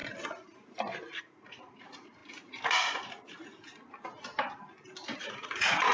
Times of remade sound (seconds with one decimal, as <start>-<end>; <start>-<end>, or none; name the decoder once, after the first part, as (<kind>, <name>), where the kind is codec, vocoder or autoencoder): 1.2-3.7 (vocoder, Vocos); 5.1-5.9